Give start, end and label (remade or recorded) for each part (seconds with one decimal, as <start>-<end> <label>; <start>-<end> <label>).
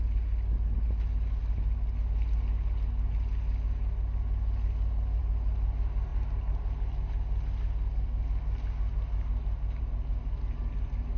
0.0-11.2 recorded